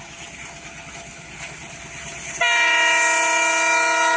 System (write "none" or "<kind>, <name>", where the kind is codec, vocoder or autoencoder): none